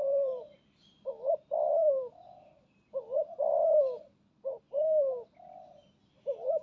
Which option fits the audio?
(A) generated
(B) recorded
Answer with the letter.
A